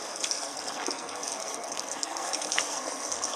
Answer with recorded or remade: remade